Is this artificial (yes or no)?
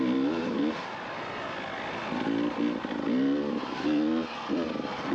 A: no